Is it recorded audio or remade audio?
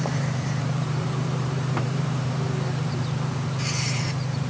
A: remade